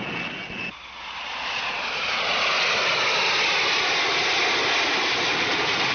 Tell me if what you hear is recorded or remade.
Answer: recorded